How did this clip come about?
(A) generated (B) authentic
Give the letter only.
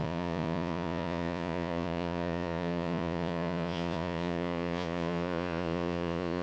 A